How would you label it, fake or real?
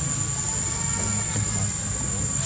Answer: real